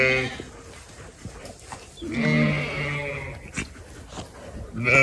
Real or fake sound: real